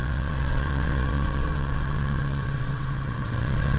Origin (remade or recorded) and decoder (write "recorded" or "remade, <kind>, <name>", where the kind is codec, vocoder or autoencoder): remade, vocoder, WaveNeXt